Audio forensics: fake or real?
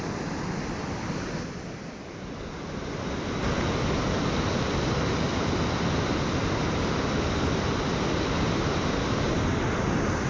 real